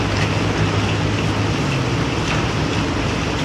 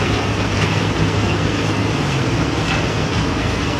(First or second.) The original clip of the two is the first